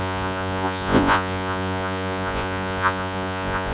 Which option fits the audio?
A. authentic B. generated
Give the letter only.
B